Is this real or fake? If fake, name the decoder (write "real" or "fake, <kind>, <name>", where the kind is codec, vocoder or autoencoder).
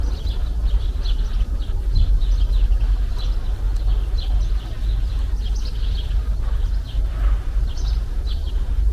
real